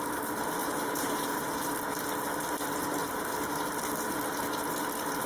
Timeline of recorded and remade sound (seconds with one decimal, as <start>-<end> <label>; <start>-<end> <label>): 0.0-0.6 recorded; 0.6-1.7 remade; 1.7-5.3 recorded